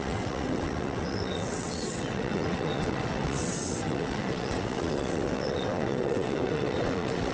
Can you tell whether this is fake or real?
fake